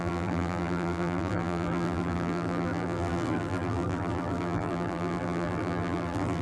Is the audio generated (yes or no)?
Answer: yes